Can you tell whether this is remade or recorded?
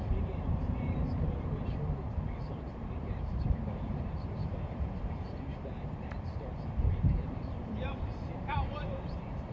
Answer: remade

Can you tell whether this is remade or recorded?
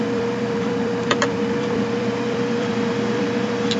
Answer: remade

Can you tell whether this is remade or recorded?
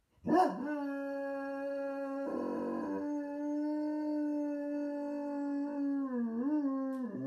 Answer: recorded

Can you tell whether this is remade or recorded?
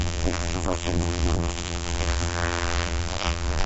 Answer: remade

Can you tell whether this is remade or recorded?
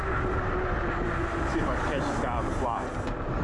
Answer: remade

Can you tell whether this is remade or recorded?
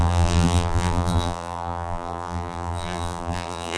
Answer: remade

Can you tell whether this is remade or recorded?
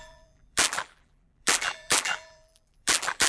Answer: remade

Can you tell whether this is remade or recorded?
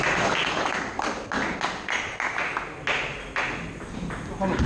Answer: recorded